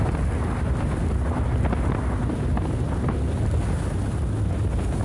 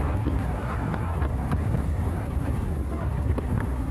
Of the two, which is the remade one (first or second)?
second